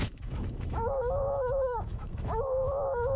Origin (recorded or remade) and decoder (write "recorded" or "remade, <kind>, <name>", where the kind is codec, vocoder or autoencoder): remade, autoencoder, DAC-VAE